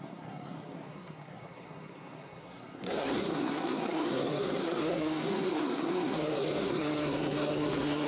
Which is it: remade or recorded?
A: remade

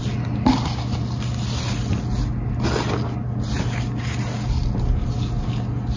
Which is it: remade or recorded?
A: recorded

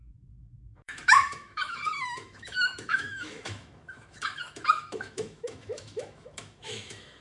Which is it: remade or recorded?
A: remade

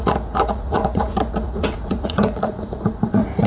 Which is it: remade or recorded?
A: remade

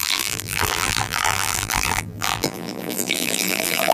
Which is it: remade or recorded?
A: remade